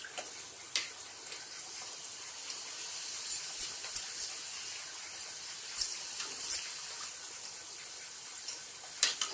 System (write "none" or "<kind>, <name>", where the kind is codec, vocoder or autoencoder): none